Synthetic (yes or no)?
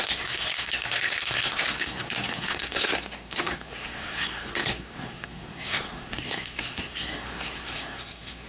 yes